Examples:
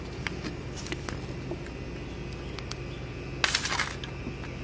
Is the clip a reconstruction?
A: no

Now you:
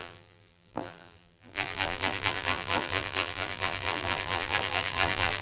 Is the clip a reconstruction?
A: yes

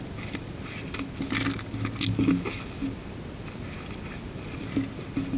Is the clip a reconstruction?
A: no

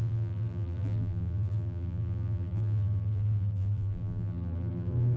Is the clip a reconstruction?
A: yes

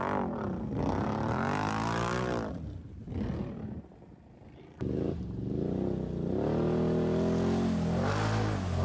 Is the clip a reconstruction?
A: no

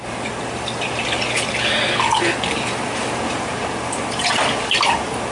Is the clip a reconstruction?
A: no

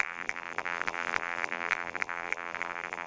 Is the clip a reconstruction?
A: yes